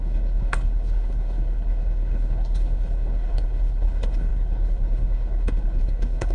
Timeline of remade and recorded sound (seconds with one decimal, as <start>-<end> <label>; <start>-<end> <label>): 0.0-6.3 remade